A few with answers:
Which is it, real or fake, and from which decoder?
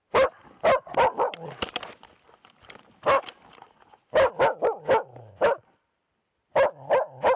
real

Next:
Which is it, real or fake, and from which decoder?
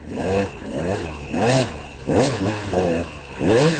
fake, codec, HILCodec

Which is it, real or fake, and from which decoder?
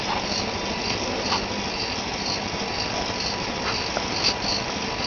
real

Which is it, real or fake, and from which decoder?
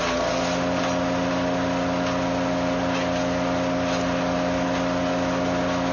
real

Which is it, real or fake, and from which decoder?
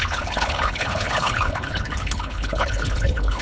fake, codec, HILCodec